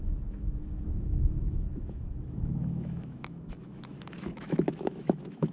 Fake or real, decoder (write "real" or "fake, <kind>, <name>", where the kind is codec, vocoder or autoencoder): fake, autoencoder, DAC-VAE